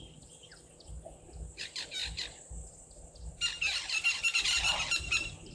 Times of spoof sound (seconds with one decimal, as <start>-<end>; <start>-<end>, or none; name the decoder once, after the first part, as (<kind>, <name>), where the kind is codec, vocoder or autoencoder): 0.0-0.5 (vocoder, BigVGAN v2); 1.6-2.0; 4.6-5.5